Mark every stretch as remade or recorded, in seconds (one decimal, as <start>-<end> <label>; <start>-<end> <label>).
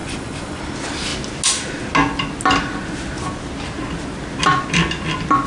0.0-0.6 remade; 0.6-5.5 recorded